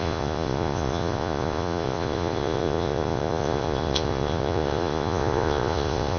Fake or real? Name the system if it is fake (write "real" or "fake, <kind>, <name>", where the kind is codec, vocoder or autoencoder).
fake, vocoder, Vocos